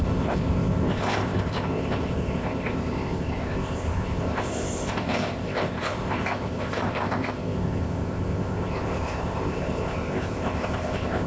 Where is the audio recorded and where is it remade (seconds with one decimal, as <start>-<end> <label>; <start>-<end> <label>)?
0.0-11.3 remade